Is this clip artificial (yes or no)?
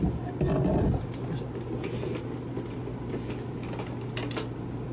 no